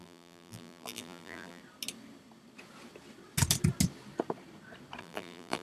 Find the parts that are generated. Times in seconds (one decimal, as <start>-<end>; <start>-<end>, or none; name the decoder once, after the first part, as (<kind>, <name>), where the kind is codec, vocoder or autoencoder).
0.0-1.6 (vocoder, BigVGAN v2); 5.0-5.6